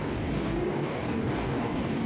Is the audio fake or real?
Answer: fake